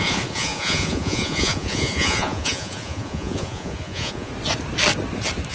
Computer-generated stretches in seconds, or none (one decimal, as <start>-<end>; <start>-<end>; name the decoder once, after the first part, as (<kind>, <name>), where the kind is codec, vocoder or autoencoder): 0.0-4.3 (vocoder, Vocos)